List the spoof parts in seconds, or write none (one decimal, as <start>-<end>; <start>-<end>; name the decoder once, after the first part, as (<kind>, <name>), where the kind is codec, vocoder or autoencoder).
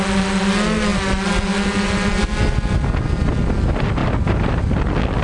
4.0-4.6 (vocoder, BigVGAN v2)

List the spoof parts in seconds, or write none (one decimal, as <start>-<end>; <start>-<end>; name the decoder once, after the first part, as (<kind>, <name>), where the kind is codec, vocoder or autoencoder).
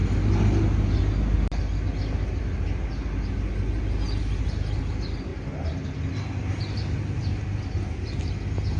none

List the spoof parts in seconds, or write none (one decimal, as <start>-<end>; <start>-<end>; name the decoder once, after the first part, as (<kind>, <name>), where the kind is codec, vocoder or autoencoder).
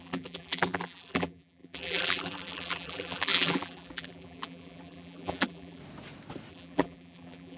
0.0-5.8 (vocoder, BigVGAN v2); 6.5-7.6